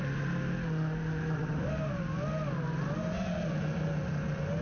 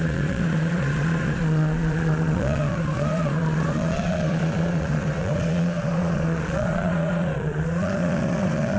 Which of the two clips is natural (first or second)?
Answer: first